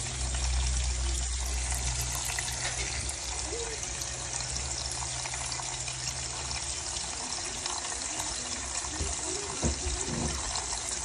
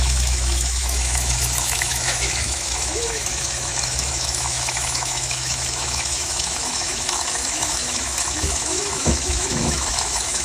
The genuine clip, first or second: first